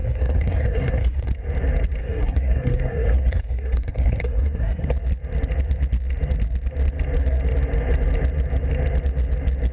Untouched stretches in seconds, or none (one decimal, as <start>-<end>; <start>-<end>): 1.3-2.0; 4.9-9.7